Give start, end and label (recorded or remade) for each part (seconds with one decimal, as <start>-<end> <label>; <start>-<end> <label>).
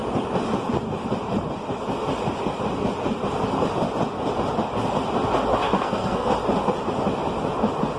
0.0-5.6 recorded; 5.6-6.3 remade; 6.3-8.0 recorded